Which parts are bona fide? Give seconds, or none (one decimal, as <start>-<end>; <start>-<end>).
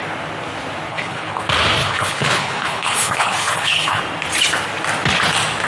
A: 0.0-0.9; 1.4-1.8; 4.0-5.7